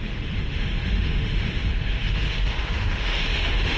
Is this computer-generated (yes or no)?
yes